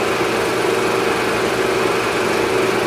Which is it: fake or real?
real